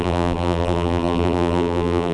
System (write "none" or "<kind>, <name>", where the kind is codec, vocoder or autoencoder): vocoder, BigVGAN v2